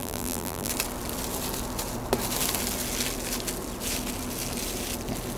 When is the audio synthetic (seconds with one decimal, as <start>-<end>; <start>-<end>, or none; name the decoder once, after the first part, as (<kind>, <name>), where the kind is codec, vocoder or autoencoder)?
0.0-0.7 (vocoder, BigVGAN v2)